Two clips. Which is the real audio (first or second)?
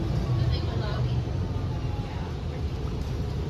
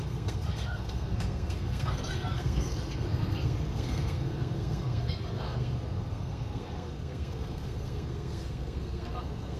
first